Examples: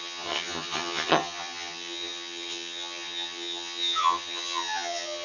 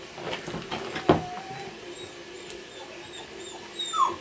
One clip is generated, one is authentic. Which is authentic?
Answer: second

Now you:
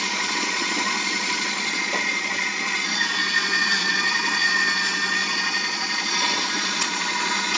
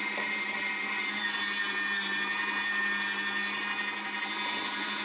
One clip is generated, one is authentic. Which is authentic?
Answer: second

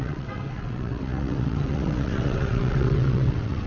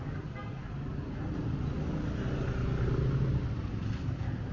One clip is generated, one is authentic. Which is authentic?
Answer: second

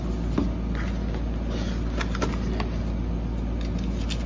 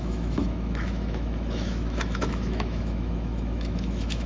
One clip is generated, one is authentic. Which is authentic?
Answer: first